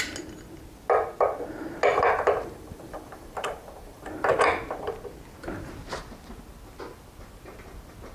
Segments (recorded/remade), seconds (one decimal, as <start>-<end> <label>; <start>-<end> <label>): 0.0-1.9 recorded; 1.9-4.4 remade; 4.4-8.1 recorded